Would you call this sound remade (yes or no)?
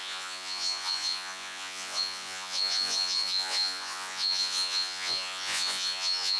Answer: yes